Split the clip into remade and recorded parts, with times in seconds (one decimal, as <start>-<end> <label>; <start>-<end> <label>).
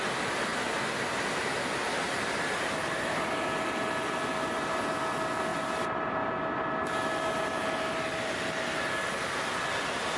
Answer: 0.0-10.2 recorded